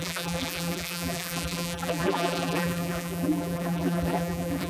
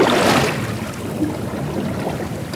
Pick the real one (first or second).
second